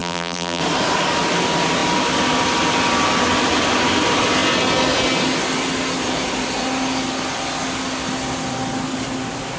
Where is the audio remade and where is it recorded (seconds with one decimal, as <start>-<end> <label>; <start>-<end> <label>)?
0.0-0.6 remade; 0.6-9.6 recorded